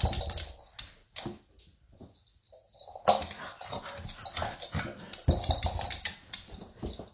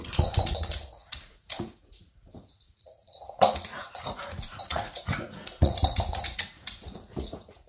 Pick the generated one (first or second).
second